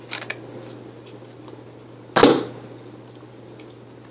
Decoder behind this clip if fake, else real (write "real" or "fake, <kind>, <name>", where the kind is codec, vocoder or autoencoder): real